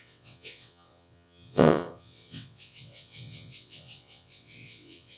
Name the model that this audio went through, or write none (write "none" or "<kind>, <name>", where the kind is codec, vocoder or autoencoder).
vocoder, WaveNeXt